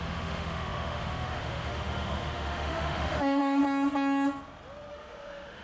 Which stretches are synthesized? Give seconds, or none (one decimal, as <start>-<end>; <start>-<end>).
0.0-3.6; 4.9-5.6

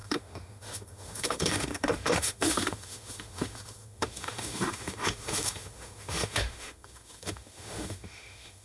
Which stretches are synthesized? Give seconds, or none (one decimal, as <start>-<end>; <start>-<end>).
0.0-8.6

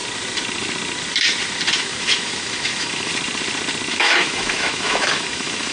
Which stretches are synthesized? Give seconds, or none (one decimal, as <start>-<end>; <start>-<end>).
1.8-3.1; 3.9-5.7

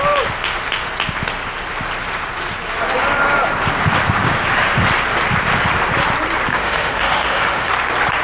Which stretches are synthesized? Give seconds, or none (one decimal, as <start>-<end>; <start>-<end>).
6.5-7.7

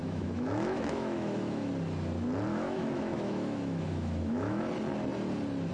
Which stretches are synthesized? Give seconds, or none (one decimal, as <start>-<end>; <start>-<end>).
0.0-1.7; 2.5-4.6

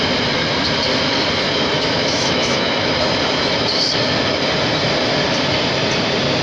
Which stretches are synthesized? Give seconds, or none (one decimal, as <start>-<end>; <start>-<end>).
1.6-2.9

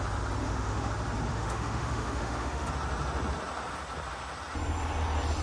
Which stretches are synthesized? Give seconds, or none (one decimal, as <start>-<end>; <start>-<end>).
0.4-0.9; 1.3-2.7

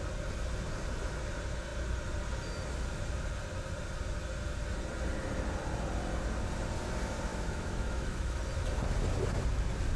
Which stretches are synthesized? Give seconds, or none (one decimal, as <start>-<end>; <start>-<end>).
7.3-8.4